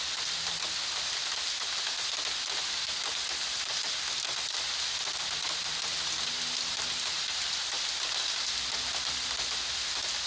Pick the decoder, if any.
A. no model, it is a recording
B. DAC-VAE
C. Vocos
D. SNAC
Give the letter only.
A